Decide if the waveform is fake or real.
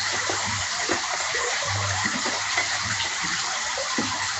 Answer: fake